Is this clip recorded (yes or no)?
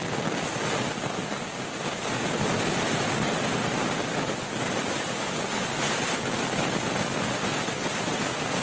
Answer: yes